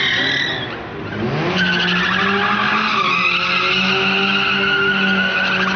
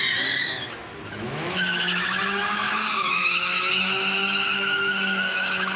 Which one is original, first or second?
first